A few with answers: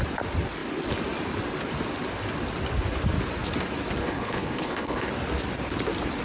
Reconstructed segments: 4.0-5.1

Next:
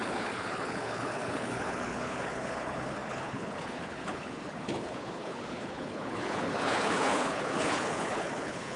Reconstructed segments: 0.0-8.8

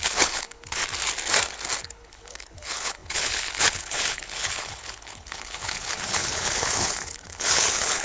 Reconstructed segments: 0.0-0.8; 1.8-8.0